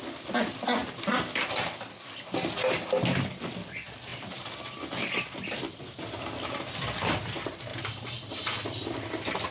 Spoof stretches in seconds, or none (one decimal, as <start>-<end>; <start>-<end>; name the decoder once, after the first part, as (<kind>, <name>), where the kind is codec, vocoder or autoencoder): none